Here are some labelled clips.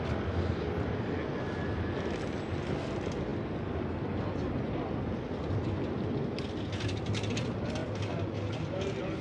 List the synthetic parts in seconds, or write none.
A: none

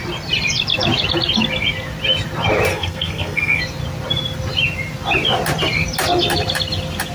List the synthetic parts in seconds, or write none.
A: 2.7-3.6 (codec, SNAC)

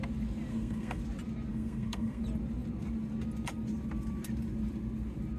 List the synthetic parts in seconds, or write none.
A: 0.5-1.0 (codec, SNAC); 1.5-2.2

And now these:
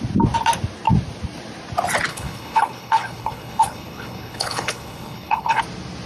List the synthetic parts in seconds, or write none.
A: 2.1-5.6 (codec, HILCodec)

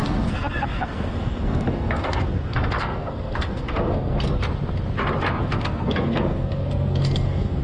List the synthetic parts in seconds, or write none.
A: 0.0-4.4 (codec, SNAC); 5.4-7.6

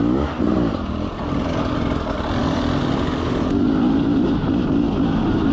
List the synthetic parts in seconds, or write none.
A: 2.4-3.5 (vocoder, BigVGAN v2)

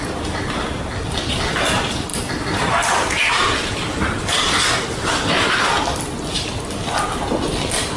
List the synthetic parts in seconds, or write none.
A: 2.1-5.5 (vocoder, BigVGAN v2)